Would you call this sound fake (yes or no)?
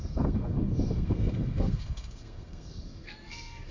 yes